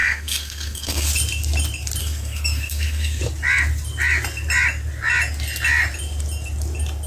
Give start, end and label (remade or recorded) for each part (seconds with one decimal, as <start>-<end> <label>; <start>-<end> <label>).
0.0-1.1 remade; 1.1-2.0 recorded; 2.0-3.2 remade; 3.2-7.1 recorded